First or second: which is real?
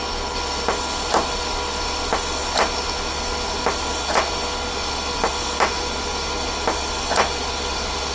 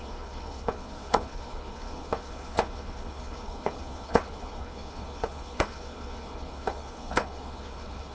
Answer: first